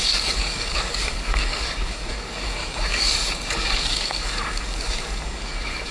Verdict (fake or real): fake